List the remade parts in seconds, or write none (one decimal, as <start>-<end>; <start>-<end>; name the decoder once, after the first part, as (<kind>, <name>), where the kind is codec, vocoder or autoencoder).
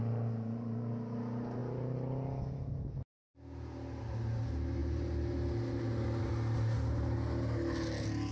none